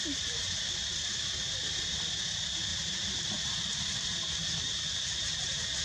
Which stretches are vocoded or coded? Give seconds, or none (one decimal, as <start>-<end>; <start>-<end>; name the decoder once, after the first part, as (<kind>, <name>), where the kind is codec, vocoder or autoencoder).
none